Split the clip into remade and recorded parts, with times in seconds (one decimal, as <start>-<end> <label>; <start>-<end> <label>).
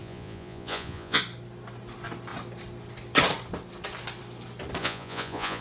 0.0-1.2 remade; 1.2-4.8 recorded; 4.8-5.6 remade